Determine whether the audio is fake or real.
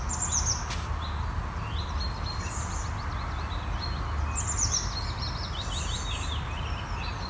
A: real